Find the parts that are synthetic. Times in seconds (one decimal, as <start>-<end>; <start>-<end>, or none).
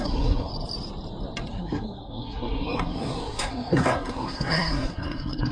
0.0-0.5; 1.5-5.5